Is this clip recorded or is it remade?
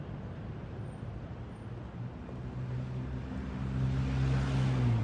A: recorded